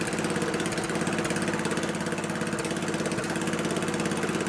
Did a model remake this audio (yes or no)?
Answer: no